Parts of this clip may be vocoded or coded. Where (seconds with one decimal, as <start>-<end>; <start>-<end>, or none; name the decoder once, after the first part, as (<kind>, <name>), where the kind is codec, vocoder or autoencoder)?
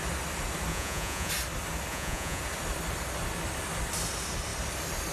0.7-1.3 (vocoder, Vocos); 1.9-2.4